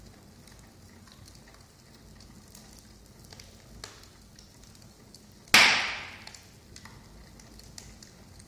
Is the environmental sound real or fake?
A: real